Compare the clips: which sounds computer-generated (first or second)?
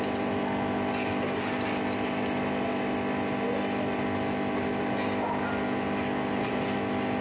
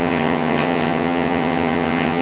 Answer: second